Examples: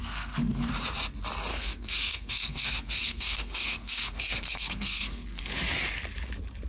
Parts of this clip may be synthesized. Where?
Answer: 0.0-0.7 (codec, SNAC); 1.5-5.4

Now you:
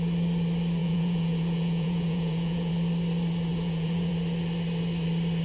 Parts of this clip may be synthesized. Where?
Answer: 0.8-2.7 (vocoder, Vocos); 3.5-4.1

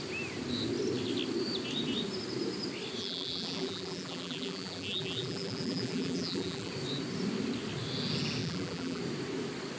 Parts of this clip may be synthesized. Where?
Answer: 3.0-6.7 (vocoder, BigVGAN v2); 8.4-9.0

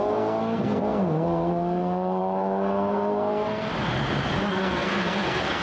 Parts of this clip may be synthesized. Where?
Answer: 0.0-3.7 (codec, SNAC); 4.5-5.6

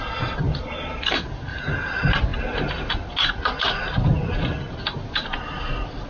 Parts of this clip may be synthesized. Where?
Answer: none

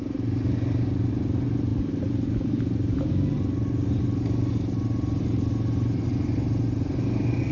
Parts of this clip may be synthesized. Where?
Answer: none

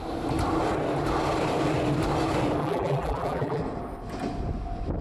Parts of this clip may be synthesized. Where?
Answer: 2.6-3.6 (vocoder, BigVGAN v2)